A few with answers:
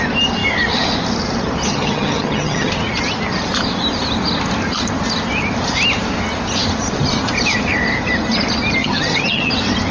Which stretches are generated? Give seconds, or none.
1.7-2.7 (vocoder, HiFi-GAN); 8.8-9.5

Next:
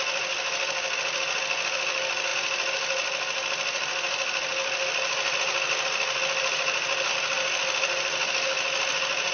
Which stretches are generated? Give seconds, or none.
none